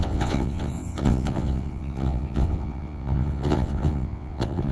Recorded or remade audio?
remade